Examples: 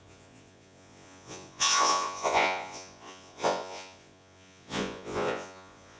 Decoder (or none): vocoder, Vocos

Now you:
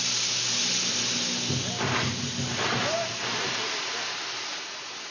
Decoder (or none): none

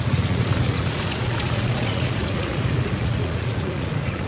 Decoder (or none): vocoder, Vocos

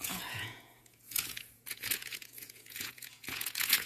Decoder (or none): vocoder, Vocos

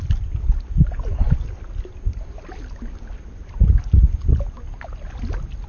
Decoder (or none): none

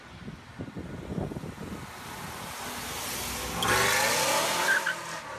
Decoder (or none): none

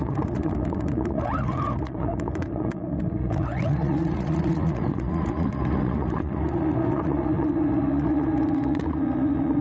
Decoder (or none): vocoder, Vocos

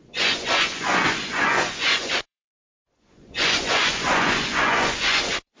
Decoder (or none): vocoder, Vocos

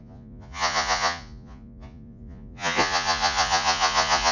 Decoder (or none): vocoder, Vocos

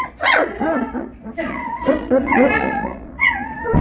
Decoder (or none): vocoder, Vocos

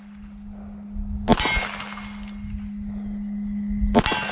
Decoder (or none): none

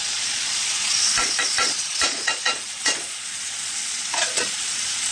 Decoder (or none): vocoder, Vocos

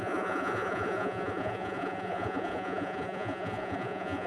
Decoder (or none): vocoder, Vocos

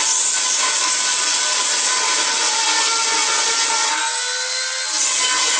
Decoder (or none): none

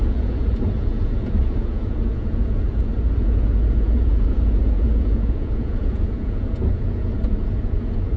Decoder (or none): vocoder, Vocos